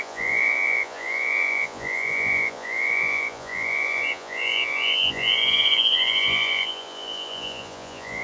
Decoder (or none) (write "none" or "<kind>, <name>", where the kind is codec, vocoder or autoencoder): vocoder, Vocos